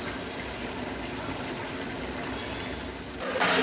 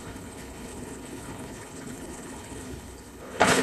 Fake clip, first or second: second